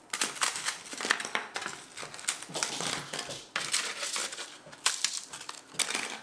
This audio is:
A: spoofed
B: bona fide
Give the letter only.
B